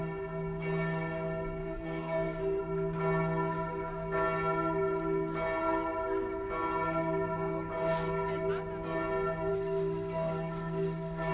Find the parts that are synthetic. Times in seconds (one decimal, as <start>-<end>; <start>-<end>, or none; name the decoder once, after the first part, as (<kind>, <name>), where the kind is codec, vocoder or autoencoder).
1.6-2.6 (codec, SNAC); 9.5-11.3